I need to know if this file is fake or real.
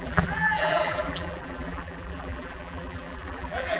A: fake